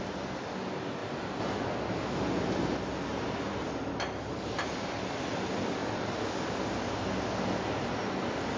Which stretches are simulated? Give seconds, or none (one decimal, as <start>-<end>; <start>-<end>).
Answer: 1.0-1.6; 3.1-3.6